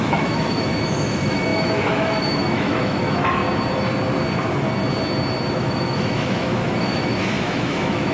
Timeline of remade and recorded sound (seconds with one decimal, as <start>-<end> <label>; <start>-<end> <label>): 0.0-3.4 remade; 3.4-5.5 recorded; 5.5-8.1 remade